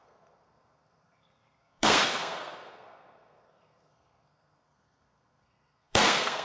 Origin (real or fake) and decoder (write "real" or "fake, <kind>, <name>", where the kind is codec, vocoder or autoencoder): fake, codec, SNAC